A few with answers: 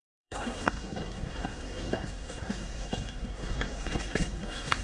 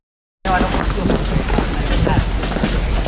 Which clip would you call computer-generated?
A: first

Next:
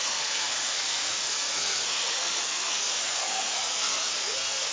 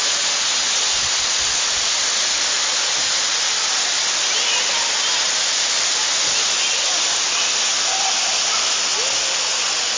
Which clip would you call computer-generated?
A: first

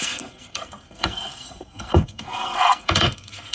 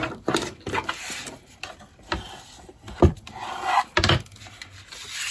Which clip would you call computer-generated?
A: first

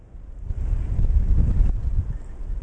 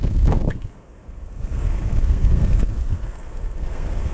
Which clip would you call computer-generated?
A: second